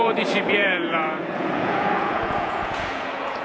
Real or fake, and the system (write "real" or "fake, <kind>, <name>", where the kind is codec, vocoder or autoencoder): fake, vocoder, Vocos